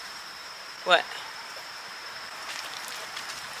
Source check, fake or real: fake